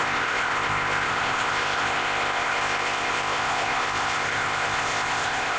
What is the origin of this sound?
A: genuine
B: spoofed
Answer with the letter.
B